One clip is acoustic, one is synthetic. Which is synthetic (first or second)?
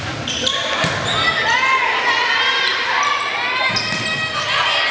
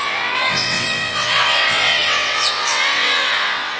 second